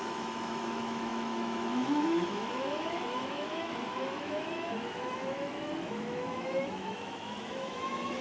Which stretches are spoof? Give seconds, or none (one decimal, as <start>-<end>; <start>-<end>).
0.0-8.2